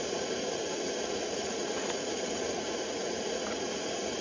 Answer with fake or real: fake